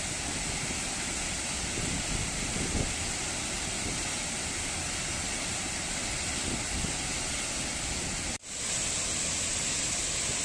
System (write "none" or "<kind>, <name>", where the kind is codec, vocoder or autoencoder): none